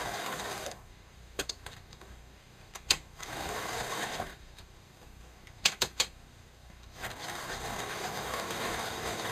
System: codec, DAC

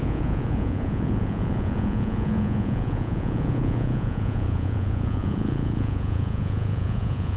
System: vocoder, Vocos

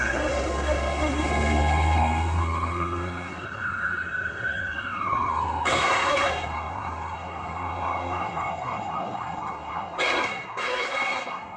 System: codec, SNAC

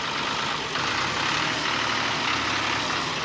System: none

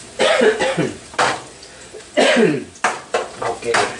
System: vocoder, BigVGAN v2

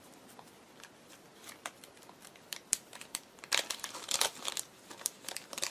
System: none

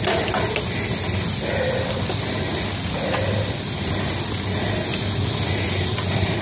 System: none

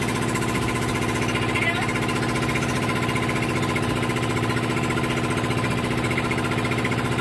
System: none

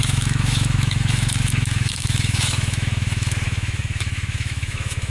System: autoencoder, DAC-VAE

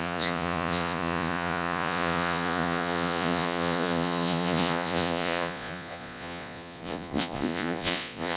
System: vocoder, Vocos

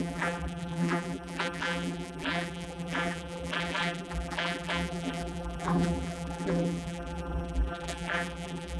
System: vocoder, BigVGAN v2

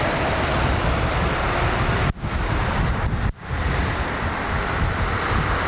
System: none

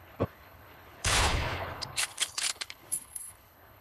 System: codec, HILCodec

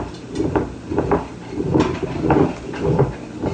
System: none